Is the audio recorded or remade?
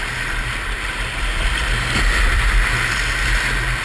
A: recorded